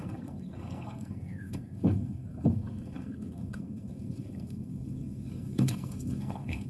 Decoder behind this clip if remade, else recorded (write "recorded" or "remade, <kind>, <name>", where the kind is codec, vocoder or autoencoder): remade, codec, SNAC